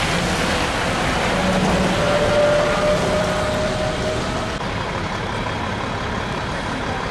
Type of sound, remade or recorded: recorded